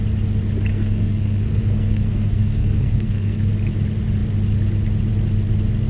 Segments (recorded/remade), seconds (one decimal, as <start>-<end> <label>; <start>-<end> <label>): 0.0-0.7 recorded; 0.7-3.5 remade; 3.5-5.9 recorded